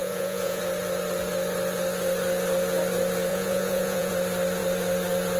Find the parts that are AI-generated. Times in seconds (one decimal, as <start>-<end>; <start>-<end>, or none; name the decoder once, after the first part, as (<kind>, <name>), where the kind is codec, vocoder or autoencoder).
0.0-0.6 (vocoder, Vocos); 3.3-4.1